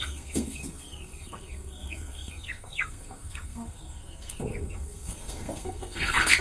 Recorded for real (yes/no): no